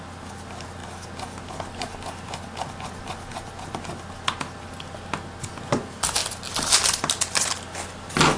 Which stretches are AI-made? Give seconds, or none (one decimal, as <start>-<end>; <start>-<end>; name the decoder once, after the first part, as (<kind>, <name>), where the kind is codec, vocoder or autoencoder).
none